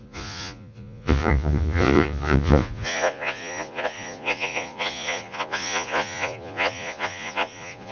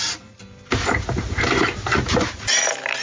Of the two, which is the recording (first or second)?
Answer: second